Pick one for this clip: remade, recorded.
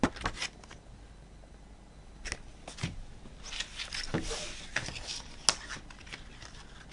recorded